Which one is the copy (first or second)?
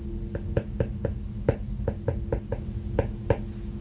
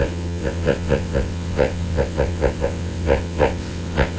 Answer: second